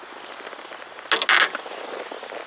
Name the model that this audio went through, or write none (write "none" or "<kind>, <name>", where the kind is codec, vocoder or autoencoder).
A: none